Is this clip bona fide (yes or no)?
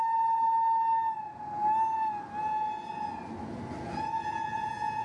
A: yes